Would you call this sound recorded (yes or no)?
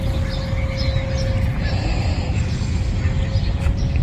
yes